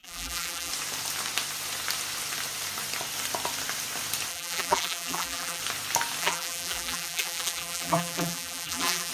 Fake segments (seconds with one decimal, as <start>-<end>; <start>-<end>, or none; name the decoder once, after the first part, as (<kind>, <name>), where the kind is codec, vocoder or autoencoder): 0.0-0.7 (vocoder, BigVGAN v2); 4.3-5.6; 6.2-9.1